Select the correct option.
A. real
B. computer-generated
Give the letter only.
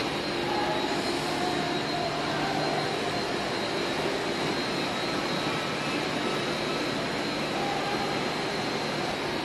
A